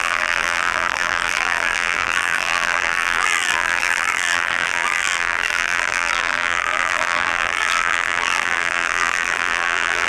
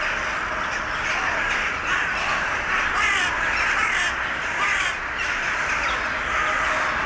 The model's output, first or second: first